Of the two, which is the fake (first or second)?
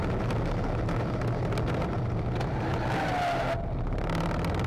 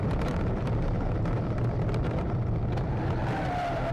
second